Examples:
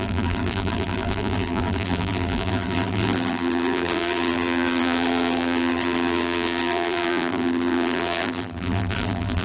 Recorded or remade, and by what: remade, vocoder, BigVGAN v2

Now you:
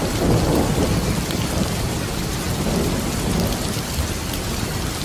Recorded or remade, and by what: recorded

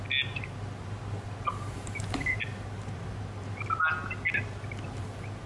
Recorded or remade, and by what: recorded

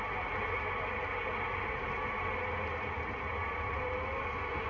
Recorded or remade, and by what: recorded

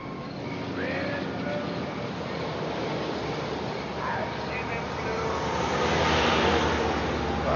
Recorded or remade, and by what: recorded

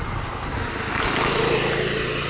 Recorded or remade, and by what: recorded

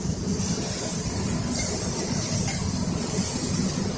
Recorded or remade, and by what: recorded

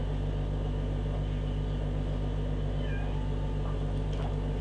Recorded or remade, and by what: recorded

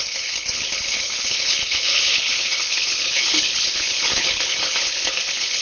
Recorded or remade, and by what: remade, codec, HILCodec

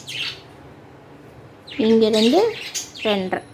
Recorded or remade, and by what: recorded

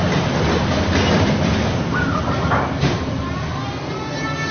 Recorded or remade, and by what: recorded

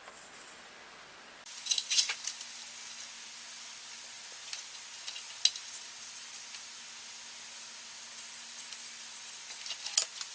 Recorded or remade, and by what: recorded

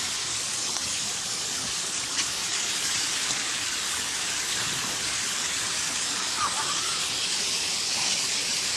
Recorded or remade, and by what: remade, codec, DAC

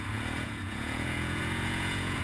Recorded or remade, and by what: remade, vocoder, Vocos